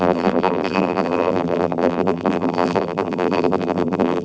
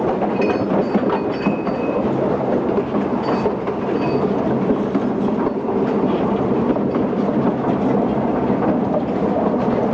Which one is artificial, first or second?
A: first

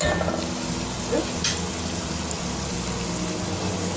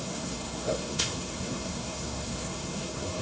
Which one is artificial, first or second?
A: second